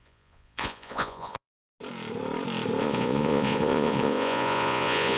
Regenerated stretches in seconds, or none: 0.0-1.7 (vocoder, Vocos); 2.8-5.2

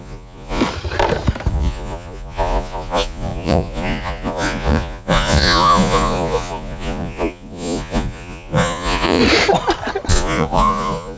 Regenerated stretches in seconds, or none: 0.0-0.6 (vocoder, Vocos); 1.5-9.2; 10.1-11.2

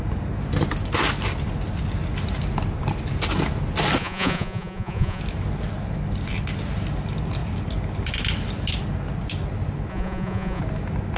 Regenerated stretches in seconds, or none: 4.0-5.2 (vocoder, Vocos); 9.9-10.6

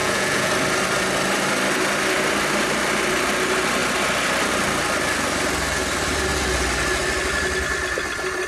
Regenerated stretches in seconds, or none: 0.0-0.5 (vocoder, Vocos)

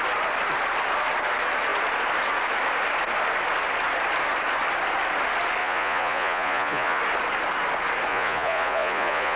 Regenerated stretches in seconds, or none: 5.6-7.0 (vocoder, Vocos); 8.1-9.4

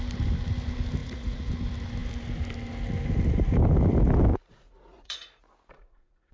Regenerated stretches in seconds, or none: 1.0-1.5 (vocoder, Vocos); 4.3-6.3